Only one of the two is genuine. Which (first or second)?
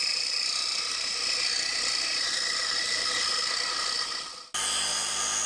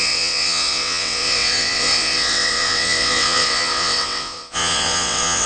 first